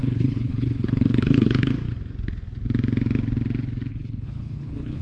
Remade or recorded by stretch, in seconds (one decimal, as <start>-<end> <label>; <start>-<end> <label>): 0.0-1.7 remade; 1.7-3.9 recorded; 3.9-5.0 remade

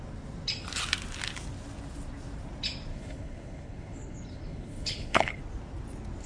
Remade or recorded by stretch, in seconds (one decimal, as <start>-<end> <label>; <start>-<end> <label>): 0.0-2.9 recorded; 2.9-5.4 remade; 5.4-6.3 recorded

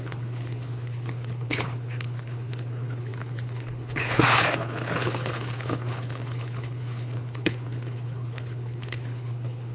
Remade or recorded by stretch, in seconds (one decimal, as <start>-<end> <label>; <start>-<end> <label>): 0.0-9.7 remade

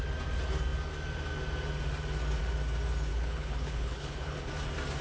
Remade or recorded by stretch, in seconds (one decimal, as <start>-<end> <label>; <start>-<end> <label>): 0.0-3.1 recorded; 3.1-4.5 remade; 4.5-5.0 recorded

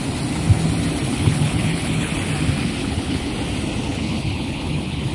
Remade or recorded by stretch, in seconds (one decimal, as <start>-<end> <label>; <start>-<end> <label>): 0.0-1.1 recorded; 1.1-2.1 remade; 2.1-2.8 recorded; 2.8-3.3 remade; 3.3-3.9 recorded; 3.9-5.1 remade

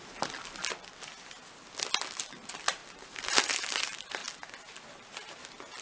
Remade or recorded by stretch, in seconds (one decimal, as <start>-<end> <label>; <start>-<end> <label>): 0.0-5.8 recorded